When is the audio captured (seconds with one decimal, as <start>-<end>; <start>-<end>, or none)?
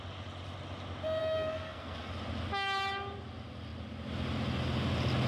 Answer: 0.0-1.2; 2.1-5.3